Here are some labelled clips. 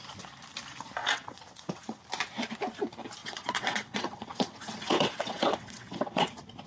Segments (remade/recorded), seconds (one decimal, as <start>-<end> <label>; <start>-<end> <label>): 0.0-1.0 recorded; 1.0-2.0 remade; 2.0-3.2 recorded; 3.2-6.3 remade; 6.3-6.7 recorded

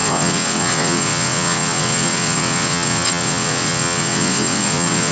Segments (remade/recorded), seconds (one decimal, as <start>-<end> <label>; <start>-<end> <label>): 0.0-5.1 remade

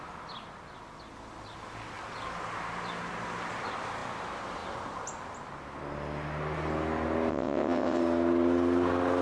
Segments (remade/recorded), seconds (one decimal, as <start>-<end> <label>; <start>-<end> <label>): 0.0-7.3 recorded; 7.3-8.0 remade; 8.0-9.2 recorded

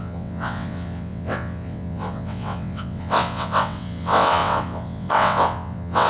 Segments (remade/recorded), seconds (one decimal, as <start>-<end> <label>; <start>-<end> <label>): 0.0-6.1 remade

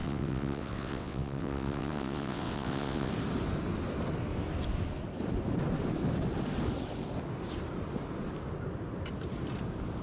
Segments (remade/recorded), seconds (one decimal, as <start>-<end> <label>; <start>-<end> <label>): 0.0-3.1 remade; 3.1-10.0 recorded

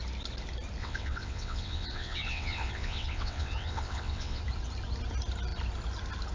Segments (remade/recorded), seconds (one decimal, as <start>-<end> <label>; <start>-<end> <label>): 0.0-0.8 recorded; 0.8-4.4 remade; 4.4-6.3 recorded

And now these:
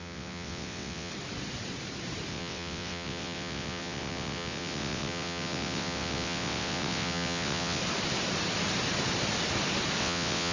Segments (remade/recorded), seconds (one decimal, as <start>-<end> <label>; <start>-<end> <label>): 0.0-1.1 remade; 1.1-2.3 recorded; 2.3-7.8 remade; 7.8-10.0 recorded; 10.0-10.5 remade

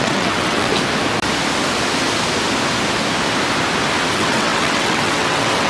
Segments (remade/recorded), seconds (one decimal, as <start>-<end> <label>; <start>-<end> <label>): 0.0-0.7 remade; 0.7-4.1 recorded; 4.1-5.7 remade